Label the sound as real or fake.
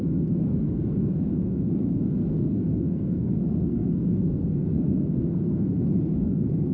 fake